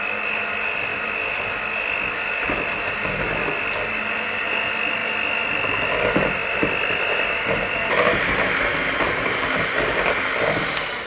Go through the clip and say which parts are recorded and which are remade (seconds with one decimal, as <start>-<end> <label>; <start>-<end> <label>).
0.0-0.9 recorded; 0.9-3.3 remade; 3.3-11.1 recorded